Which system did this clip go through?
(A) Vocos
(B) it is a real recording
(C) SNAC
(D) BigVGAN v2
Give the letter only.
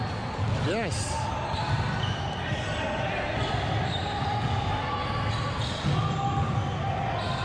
B